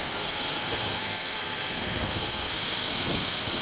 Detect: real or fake fake